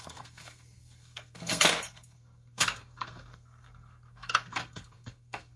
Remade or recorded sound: remade